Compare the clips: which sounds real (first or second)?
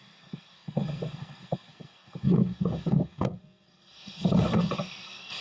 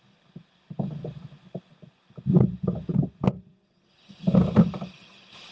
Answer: second